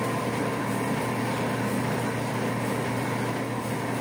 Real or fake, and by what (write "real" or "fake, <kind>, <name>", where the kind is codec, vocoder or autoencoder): real